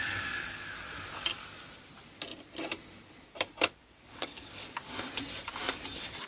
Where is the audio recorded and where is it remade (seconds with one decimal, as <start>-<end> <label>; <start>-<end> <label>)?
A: 0.0-1.4 remade; 1.4-3.8 recorded; 3.8-4.8 remade; 4.8-6.3 recorded